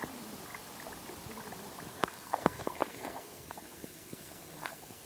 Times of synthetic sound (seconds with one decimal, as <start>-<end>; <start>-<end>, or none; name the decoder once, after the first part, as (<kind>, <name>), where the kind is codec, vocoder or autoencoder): 1.9-5.1 (codec, SNAC)